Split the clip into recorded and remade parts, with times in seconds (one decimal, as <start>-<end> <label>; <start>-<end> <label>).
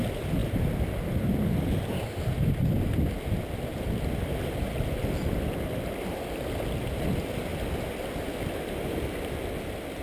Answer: 0.0-10.0 recorded